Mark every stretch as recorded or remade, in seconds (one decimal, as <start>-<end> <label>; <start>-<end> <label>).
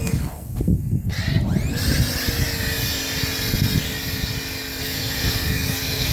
0.0-1.1 remade; 1.1-4.8 recorded; 4.8-6.1 remade